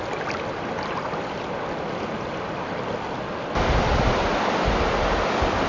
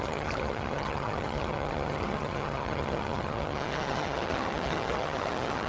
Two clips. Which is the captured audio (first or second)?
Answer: first